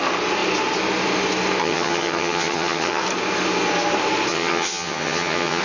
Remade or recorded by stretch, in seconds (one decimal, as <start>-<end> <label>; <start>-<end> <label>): 0.0-1.6 recorded; 1.6-3.0 remade; 3.0-4.3 recorded; 4.3-5.6 remade